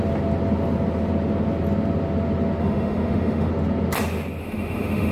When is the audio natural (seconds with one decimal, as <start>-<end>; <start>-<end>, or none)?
0.0-2.6; 3.5-4.4